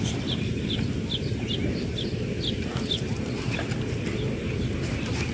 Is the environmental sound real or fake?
real